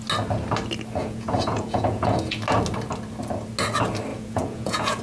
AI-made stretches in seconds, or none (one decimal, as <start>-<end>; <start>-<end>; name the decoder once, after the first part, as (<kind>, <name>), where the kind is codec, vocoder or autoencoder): 1.0-2.4 (vocoder, Vocos); 4.1-5.0

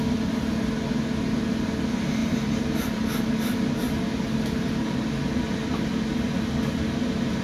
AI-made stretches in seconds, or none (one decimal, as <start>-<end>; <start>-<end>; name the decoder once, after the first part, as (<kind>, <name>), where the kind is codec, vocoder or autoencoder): 2.2-3.3 (vocoder, BigVGAN v2)

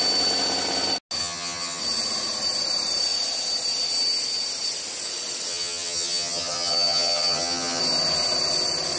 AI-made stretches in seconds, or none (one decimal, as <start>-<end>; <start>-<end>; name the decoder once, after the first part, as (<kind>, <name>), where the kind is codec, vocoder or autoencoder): 1.2-1.8 (vocoder, HiFi-GAN); 5.5-7.8

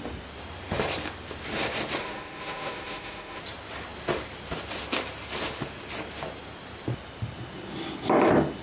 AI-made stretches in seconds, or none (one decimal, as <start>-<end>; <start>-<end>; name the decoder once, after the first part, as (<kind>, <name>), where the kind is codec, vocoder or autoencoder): 2.0-3.4 (autoencoder, DAC-VAE)

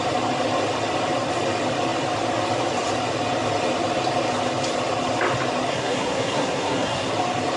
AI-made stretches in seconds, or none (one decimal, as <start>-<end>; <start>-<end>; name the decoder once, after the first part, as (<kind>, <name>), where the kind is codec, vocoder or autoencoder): 5.7-7.1 (codec, SNAC)

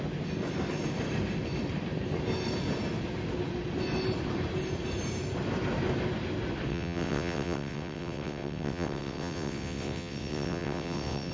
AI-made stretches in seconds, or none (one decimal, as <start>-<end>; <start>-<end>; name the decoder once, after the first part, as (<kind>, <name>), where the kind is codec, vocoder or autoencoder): 6.7-11.3 (vocoder, WaveNeXt)

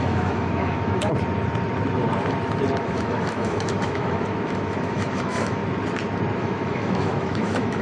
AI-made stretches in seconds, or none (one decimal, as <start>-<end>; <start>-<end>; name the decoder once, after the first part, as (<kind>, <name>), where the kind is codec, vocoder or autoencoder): 0.0-1.1 (autoencoder, DAC-VAE); 2.8-5.6; 6.4-7.8

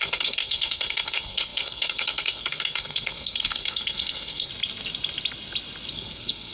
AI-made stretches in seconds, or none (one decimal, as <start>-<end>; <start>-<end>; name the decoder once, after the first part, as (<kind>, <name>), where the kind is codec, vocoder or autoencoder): 0.0-4.5 (codec, SNAC); 5.9-6.5